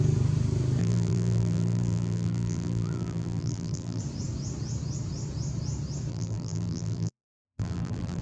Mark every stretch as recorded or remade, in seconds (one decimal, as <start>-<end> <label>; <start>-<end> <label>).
0.0-0.8 recorded; 0.8-4.0 remade; 4.0-6.1 recorded; 6.1-8.2 remade